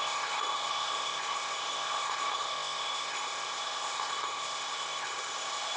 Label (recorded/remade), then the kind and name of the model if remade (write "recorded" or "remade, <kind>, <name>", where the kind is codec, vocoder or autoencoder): remade, codec, ZipCodec